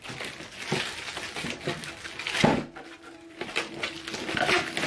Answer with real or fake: real